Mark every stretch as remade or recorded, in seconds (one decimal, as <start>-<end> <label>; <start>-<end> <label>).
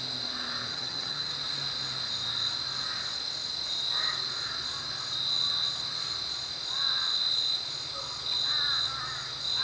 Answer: 0.0-0.7 recorded; 0.7-1.3 remade; 1.3-9.6 recorded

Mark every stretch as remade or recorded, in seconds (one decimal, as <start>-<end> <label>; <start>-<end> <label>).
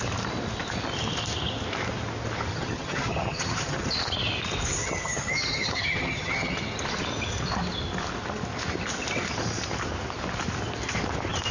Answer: 0.0-2.5 recorded; 2.5-3.9 remade; 3.9-4.8 recorded; 4.8-6.6 remade; 6.6-11.5 recorded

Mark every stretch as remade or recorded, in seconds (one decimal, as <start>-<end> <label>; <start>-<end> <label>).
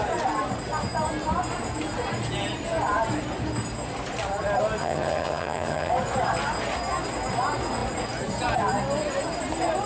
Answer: 0.0-4.8 recorded; 4.8-5.9 remade; 5.9-9.9 recorded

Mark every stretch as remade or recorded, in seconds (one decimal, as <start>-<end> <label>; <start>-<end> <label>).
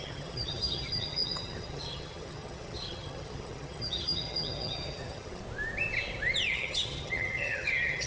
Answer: 0.0-5.4 remade; 5.4-6.5 recorded; 6.5-8.1 remade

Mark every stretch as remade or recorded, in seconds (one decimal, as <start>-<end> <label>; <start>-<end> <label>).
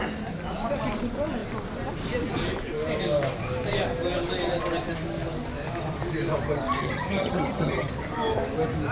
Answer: 0.0-6.8 recorded; 6.8-7.9 remade; 7.9-8.9 recorded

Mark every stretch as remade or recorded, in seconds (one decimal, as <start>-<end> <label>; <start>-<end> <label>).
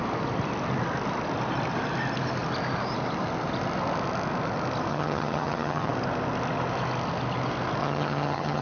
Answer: 0.0-4.9 recorded; 4.9-5.9 remade; 5.9-7.8 recorded; 7.8-8.6 remade